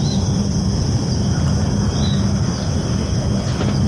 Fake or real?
real